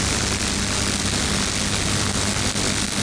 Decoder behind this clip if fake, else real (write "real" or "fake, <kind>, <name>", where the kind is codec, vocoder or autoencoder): real